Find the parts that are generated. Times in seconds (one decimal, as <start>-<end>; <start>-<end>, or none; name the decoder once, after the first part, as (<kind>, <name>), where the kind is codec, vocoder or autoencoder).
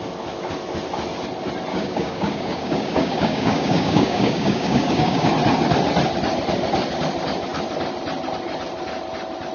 1.7-5.3 (codec, DAC)